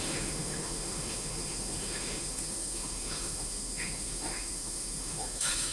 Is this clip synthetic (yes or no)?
yes